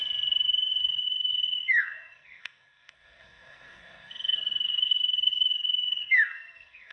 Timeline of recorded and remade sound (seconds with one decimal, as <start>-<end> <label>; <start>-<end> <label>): 0.0-0.8 recorded; 0.8-6.9 remade